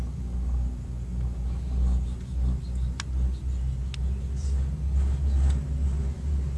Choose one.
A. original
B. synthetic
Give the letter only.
A